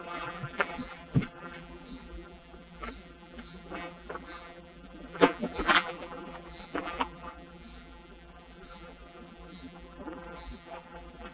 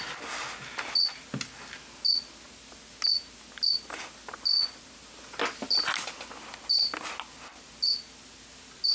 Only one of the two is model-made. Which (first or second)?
first